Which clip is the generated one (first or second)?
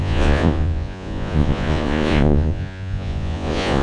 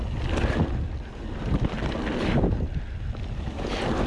first